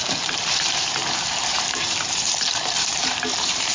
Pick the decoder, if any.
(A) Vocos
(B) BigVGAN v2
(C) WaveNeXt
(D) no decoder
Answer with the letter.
B